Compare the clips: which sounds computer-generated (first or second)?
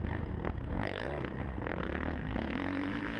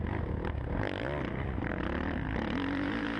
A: first